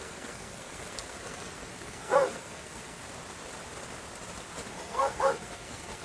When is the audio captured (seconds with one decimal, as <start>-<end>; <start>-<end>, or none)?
3.0-4.7